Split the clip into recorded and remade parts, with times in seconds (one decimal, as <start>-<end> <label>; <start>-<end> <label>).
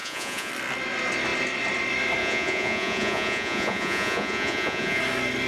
0.0-0.5 remade; 0.5-2.2 recorded; 2.2-5.0 remade; 5.0-5.5 recorded